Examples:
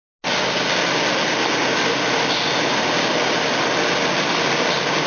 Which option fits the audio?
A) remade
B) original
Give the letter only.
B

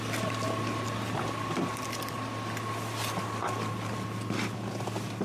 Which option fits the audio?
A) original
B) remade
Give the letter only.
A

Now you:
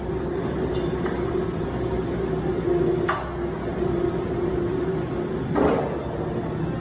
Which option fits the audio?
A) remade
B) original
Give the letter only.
B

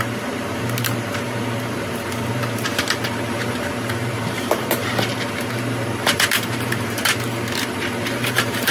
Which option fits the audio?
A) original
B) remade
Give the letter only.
B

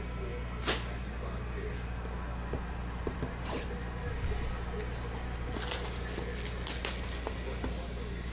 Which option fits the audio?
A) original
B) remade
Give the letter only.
A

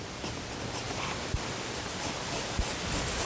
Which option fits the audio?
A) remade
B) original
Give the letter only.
A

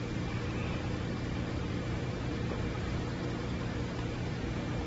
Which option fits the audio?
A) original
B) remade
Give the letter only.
A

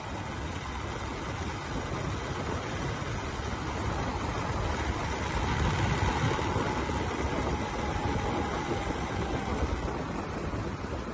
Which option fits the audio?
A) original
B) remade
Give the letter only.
A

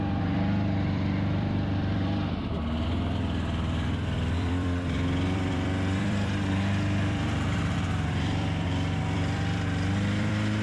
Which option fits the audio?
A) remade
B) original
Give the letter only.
A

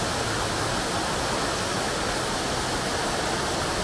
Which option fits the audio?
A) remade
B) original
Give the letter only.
B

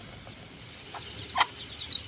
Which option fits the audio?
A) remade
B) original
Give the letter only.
B